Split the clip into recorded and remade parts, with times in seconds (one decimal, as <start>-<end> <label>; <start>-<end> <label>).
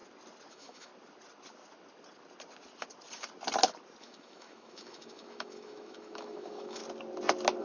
0.0-0.5 recorded; 0.5-0.9 remade; 0.9-4.0 recorded; 4.0-6.8 remade; 6.8-7.6 recorded